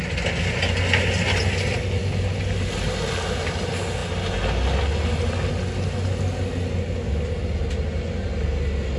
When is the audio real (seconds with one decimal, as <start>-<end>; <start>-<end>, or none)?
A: 0.0-9.0